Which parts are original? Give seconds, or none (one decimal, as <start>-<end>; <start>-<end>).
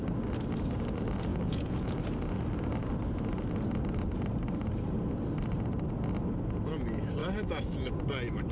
0.0-1.3; 2.0-8.5